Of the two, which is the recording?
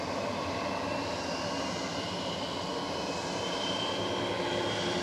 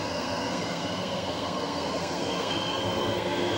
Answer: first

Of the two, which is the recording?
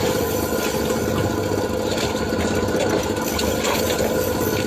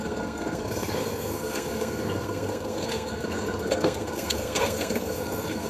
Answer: first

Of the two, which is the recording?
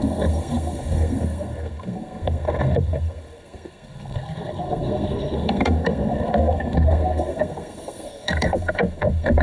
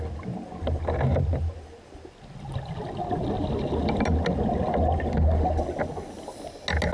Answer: second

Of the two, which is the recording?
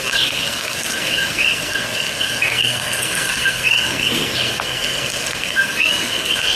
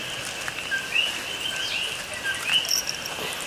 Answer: second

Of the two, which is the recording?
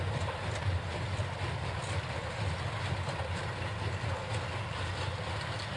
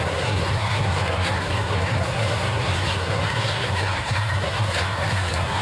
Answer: first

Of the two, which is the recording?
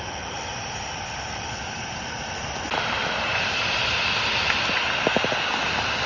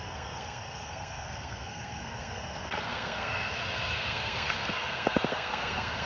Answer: first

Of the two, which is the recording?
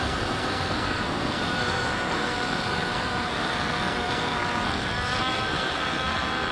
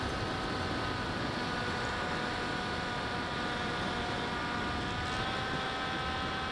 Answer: second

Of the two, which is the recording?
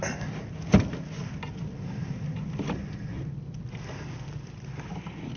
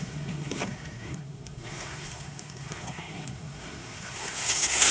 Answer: first